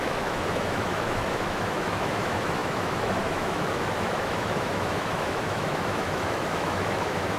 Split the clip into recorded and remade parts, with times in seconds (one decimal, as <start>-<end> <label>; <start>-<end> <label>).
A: 0.0-7.4 remade